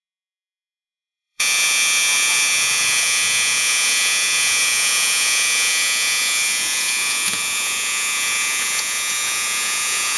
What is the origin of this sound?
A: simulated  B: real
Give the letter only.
A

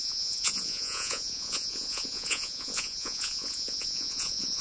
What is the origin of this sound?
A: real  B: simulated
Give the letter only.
B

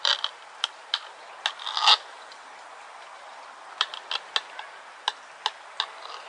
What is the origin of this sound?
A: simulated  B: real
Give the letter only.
B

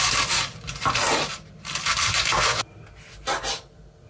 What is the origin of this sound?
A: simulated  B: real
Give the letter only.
B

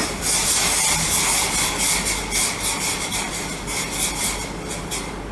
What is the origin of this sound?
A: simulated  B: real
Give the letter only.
B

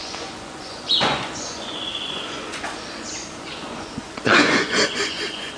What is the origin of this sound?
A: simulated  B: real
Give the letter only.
A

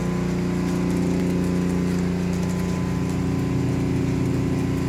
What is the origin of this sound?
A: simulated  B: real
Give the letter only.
B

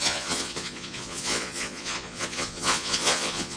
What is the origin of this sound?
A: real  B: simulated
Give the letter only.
B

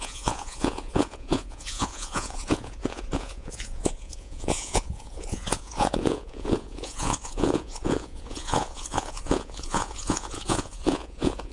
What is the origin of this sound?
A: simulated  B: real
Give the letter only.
A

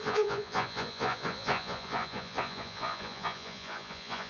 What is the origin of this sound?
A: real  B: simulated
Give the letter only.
B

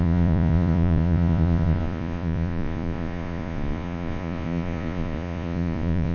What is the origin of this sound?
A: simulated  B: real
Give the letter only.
A